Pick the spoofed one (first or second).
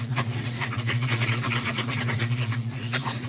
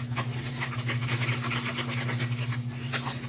first